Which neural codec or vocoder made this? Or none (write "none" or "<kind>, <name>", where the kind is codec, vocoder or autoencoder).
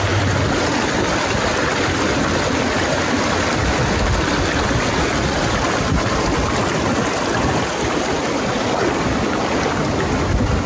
none